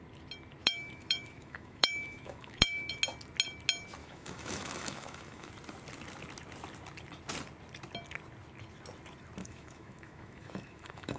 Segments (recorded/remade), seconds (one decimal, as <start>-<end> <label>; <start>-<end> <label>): 0.0-0.6 recorded; 0.6-3.0 remade; 3.0-4.0 recorded; 4.0-5.5 remade; 5.5-9.4 recorded; 9.4-11.2 remade